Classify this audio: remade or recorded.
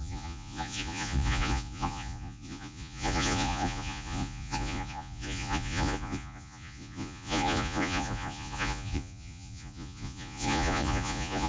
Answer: remade